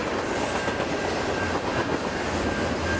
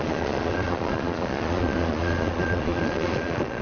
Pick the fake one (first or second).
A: second